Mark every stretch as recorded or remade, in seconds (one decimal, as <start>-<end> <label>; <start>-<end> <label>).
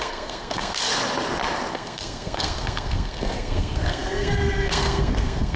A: 0.0-0.9 remade; 0.9-1.7 recorded; 1.7-5.6 remade